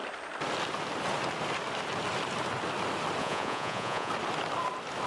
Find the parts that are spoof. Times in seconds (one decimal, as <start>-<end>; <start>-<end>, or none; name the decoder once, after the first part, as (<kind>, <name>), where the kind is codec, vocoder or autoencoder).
3.2-4.1 (vocoder, Vocos)